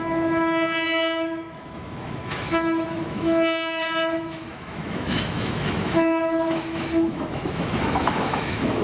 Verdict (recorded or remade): remade